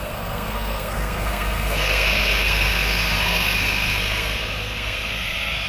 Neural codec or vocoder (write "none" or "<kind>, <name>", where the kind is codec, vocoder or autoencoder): codec, SNAC